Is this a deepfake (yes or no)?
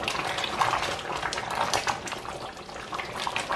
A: no